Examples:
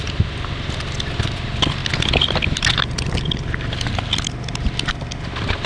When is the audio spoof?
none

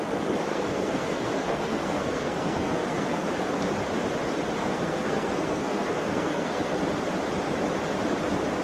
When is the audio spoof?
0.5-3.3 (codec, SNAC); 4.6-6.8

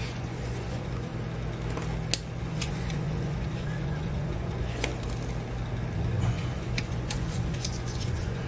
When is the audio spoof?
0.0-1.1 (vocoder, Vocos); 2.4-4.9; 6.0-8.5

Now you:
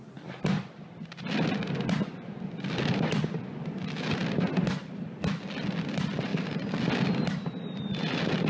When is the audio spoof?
0.0-4.2 (vocoder, BigVGAN v2); 4.8-6.3; 7.6-8.5

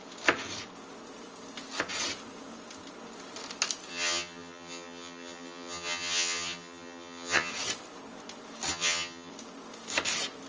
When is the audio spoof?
3.9-7.5 (vocoder, HiFi-GAN); 8.7-9.3